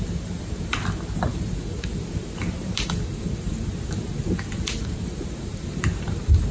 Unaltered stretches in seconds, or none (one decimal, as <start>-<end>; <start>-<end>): none